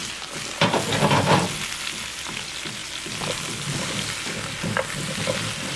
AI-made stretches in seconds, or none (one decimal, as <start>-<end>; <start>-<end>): none